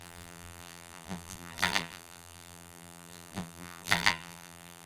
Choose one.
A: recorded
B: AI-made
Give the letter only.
B